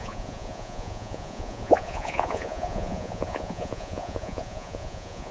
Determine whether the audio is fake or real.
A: fake